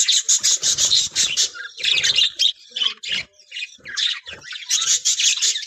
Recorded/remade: remade